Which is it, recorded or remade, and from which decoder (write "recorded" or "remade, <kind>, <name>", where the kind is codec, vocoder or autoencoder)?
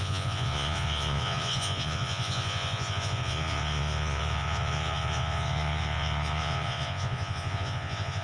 remade, vocoder, Vocos